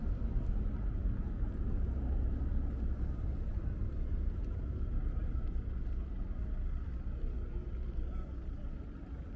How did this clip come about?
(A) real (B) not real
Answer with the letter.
A